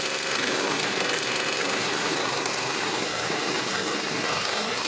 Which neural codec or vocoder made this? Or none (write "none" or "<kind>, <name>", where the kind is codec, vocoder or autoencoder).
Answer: codec, SNAC